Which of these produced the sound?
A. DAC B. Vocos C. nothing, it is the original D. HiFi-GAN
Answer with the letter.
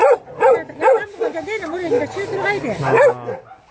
C